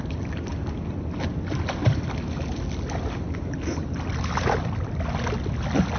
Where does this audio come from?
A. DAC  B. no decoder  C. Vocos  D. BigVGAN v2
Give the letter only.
B